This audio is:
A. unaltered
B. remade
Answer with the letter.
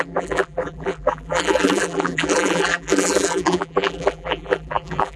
B